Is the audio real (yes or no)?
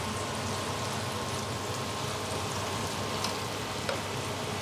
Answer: yes